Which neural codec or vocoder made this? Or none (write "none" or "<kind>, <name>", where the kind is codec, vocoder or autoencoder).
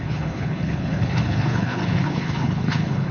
codec, HILCodec